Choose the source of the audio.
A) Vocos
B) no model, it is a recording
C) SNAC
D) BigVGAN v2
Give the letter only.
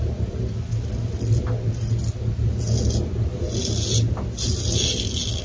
B